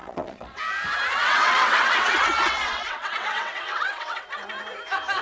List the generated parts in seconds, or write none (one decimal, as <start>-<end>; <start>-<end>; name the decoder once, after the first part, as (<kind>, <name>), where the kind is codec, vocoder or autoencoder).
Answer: 0.0-0.6 (vocoder, WaveNeXt); 1.2-4.3